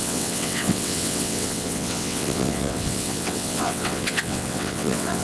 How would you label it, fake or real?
fake